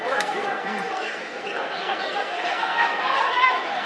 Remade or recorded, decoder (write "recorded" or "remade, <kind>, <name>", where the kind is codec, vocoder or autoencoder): remade, codec, SNAC